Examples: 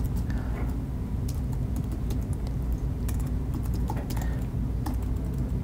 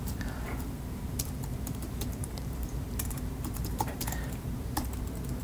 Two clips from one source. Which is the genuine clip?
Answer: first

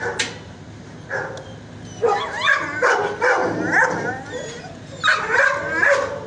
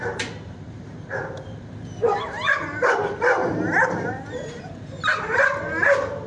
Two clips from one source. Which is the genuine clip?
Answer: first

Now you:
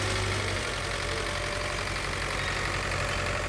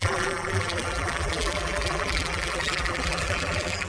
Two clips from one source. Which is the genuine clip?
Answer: first